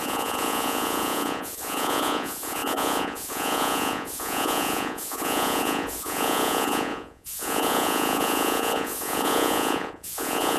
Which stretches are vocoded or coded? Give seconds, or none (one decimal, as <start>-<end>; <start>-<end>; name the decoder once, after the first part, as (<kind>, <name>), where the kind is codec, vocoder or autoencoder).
0.0-10.6 (vocoder, Vocos)